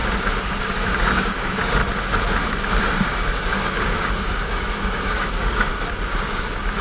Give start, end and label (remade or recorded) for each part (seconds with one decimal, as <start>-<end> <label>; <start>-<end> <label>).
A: 0.0-0.6 recorded; 0.6-1.8 remade; 1.8-2.8 recorded; 2.8-5.7 remade; 5.7-6.2 recorded; 6.2-6.8 remade